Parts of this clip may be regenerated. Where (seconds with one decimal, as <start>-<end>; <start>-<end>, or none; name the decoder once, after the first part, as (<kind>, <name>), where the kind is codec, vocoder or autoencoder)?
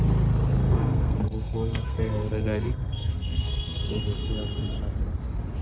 0.6-4.0 (codec, SNAC)